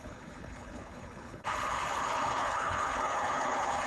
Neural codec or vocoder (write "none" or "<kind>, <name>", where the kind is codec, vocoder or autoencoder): codec, HILCodec